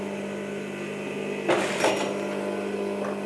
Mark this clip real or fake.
real